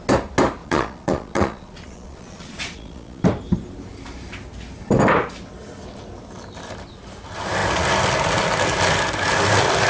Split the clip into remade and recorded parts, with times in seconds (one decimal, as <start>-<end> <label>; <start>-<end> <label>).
0.0-0.6 recorded; 0.6-3.2 remade; 3.2-9.9 recorded

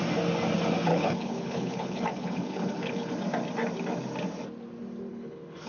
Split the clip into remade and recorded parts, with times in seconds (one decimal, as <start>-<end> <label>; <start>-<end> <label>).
0.0-0.9 recorded; 0.9-3.1 remade; 3.1-5.1 recorded; 5.1-5.7 remade

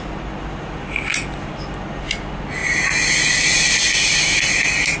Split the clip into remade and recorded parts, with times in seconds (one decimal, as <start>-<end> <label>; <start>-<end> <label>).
0.0-5.0 recorded

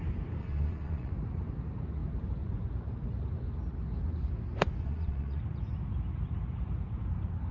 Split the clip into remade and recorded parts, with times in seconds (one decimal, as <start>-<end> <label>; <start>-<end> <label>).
0.0-0.4 recorded; 0.4-1.1 remade; 1.1-4.8 recorded; 4.8-5.4 remade; 5.4-7.5 recorded

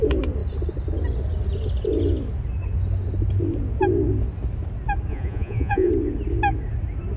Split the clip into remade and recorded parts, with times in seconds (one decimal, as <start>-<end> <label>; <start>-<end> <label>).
0.0-5.1 recorded; 5.1-5.9 remade; 5.9-7.2 recorded

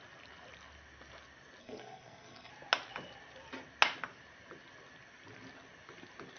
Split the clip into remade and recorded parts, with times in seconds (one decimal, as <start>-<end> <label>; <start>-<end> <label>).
0.0-1.6 recorded; 1.6-2.5 remade; 2.5-6.4 recorded

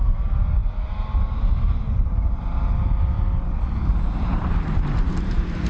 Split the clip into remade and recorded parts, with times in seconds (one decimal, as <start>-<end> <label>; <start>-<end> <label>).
0.0-5.7 remade

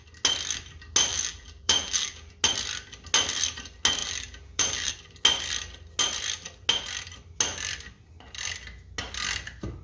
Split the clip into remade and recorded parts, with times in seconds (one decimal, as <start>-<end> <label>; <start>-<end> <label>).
0.0-1.1 recorded; 1.1-2.3 remade; 2.3-4.0 recorded; 4.0-4.9 remade; 4.9-9.8 recorded